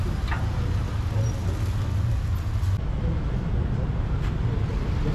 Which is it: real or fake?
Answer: real